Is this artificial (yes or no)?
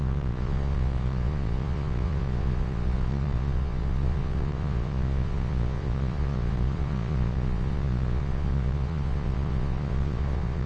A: yes